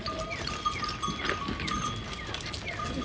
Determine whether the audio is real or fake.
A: real